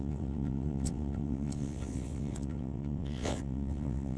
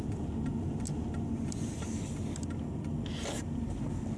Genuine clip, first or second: second